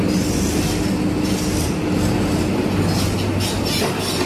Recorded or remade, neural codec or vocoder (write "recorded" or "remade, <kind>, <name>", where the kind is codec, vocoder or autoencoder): recorded